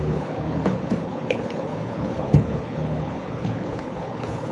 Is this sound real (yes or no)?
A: no